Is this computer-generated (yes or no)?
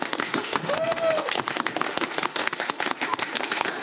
yes